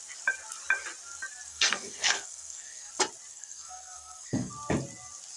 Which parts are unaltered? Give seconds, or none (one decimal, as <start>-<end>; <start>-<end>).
0.0-1.5; 2.9-3.3; 4.5-5.4